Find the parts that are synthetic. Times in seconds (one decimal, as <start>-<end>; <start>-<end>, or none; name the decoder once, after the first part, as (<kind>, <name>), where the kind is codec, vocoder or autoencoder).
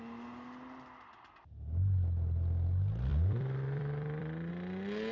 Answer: 3.1-4.5 (vocoder, BigVGAN v2)